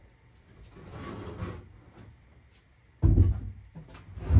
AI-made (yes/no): no